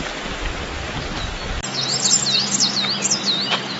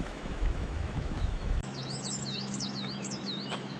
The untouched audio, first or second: first